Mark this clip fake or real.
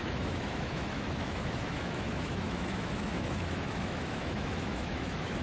fake